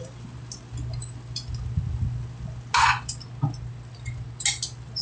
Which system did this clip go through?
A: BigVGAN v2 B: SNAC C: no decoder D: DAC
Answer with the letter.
C